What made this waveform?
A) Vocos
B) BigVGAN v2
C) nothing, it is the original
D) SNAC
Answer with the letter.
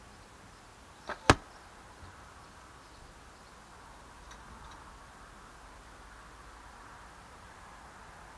C